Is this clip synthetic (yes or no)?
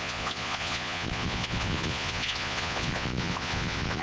yes